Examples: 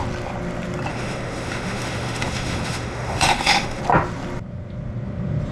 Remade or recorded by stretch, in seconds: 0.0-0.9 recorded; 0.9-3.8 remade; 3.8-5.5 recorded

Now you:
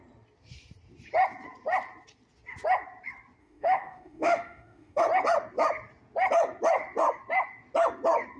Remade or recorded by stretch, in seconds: 0.0-3.4 recorded; 3.4-5.0 remade; 5.0-8.4 recorded

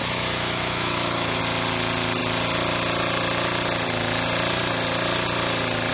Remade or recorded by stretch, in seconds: 0.0-1.4 remade; 1.4-5.9 recorded

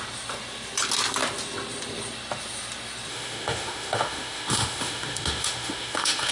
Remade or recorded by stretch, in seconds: 0.0-3.1 recorded; 3.1-6.3 remade

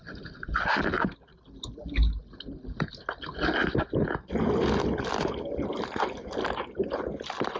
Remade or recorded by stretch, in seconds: 0.0-7.6 recorded